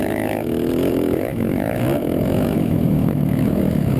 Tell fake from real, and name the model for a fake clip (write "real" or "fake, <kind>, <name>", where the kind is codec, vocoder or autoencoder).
fake, autoencoder, DAC-VAE